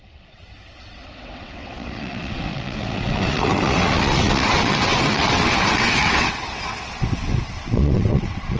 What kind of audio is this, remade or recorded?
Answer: remade